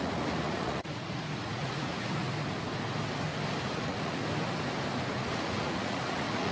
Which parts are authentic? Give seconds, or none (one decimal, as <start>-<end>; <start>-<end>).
2.2-3.7; 4.2-5.1